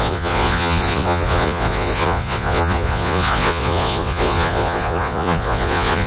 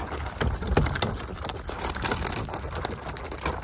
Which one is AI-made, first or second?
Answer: first